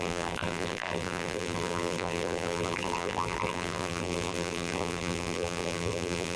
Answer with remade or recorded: remade